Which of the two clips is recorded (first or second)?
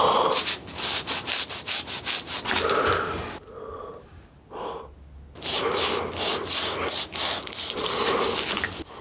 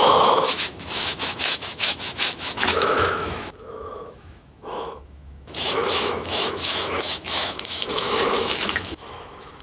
first